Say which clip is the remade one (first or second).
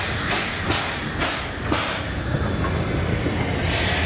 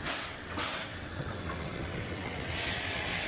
second